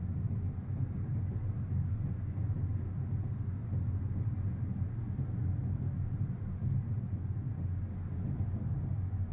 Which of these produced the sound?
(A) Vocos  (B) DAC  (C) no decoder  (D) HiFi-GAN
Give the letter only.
C